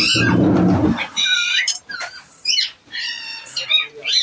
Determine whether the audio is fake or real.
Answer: fake